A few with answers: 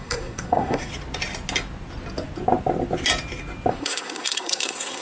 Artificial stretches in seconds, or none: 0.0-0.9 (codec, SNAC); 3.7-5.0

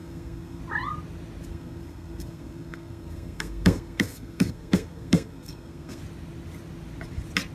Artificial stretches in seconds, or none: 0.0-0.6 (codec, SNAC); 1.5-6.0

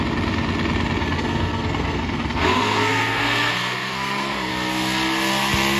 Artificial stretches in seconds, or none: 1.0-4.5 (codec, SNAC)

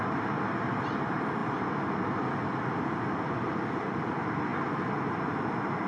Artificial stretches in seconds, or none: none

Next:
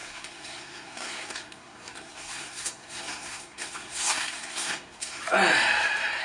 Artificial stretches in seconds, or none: 0.0-5.2 (codec, SNAC)

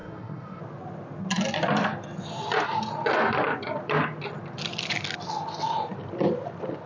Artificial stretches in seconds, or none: 0.0-0.6 (codec, SNAC)

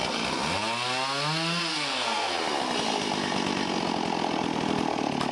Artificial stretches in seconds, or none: 1.7-2.3 (codec, SNAC)

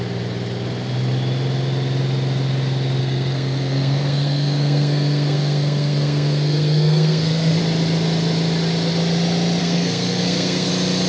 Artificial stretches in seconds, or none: 3.0-7.6 (codec, SNAC); 9.6-10.7